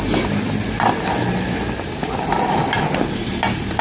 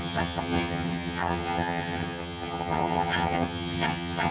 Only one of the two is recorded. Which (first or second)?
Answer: first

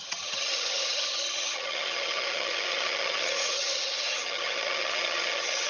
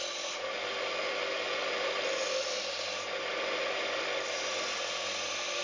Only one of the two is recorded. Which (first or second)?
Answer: second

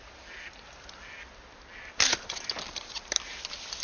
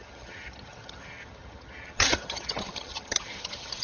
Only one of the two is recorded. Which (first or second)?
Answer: first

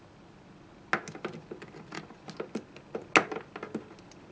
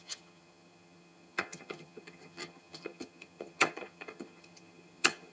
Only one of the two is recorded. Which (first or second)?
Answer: first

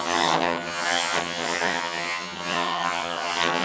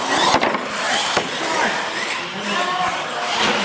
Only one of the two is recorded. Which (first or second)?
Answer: second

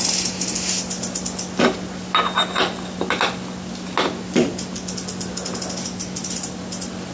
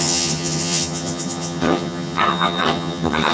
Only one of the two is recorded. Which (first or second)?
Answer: first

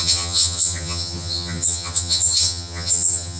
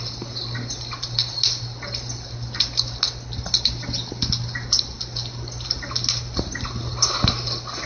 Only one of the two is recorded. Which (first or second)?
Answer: second